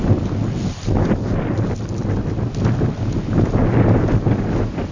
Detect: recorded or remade recorded